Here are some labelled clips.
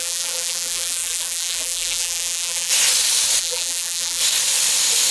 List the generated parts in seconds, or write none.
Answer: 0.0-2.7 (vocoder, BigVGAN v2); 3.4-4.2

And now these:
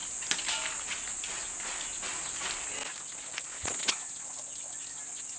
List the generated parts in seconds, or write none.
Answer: none

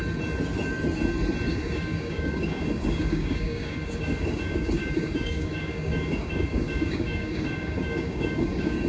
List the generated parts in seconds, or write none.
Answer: 1.5-8.9 (codec, DAC)

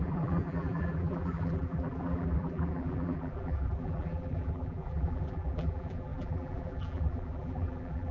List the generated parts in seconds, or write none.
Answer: 0.0-8.1 (vocoder, BigVGAN v2)

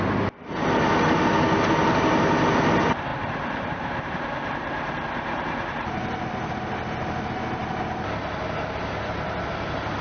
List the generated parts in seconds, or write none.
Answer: 3.1-6.0 (vocoder, BigVGAN v2)